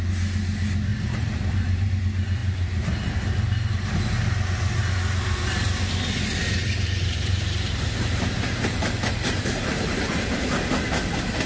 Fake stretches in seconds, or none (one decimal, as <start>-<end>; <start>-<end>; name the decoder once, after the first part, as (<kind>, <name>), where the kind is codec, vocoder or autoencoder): 0.9-1.9 (vocoder, BigVGAN v2); 6.4-10.7